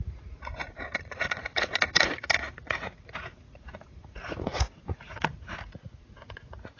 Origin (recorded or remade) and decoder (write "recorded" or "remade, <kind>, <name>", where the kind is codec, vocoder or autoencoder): remade, vocoder, Vocos